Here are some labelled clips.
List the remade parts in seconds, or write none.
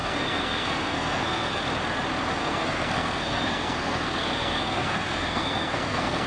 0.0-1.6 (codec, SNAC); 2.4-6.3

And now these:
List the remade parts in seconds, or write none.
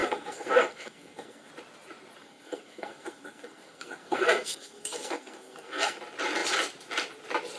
0.0-1.5 (codec, SNAC); 2.2-6.0